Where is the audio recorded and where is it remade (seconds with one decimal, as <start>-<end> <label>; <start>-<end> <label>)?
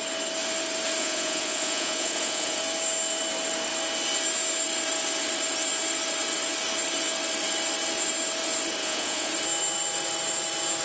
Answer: 0.0-1.0 recorded; 1.0-2.6 remade; 2.6-8.8 recorded; 8.8-9.3 remade; 9.3-10.8 recorded